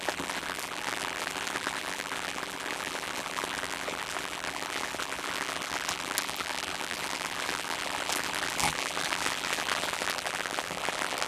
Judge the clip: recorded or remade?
remade